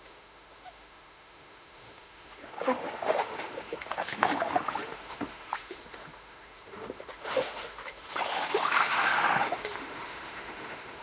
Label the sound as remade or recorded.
remade